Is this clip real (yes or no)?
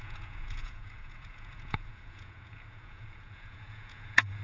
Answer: no